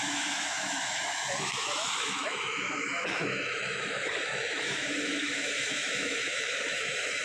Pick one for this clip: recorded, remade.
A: remade